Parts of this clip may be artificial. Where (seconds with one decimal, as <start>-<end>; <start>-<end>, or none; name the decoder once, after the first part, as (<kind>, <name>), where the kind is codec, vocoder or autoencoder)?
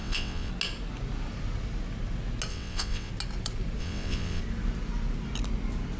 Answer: 0.0-0.5 (vocoder, WaveNeXt); 2.5-3.1; 3.8-4.4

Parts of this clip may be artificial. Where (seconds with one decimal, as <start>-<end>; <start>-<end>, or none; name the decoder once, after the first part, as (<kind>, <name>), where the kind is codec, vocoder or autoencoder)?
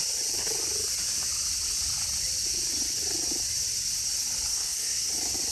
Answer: 4.5-5.1 (codec, SNAC)